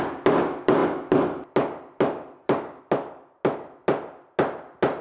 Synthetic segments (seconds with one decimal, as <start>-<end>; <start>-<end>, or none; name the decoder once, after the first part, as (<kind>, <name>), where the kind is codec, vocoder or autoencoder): none